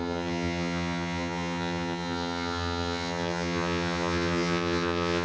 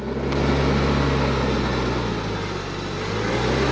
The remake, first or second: first